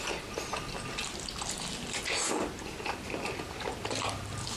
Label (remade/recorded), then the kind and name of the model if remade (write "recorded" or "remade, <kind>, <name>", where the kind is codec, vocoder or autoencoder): remade, vocoder, BigVGAN v2